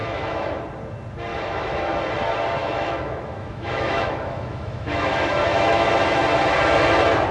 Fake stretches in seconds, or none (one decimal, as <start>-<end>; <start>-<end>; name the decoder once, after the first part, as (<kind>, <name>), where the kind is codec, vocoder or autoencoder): 0.0-0.6 (autoencoder, DAC-VAE); 1.3-1.9; 2.6-5.9